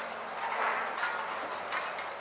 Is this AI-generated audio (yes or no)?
no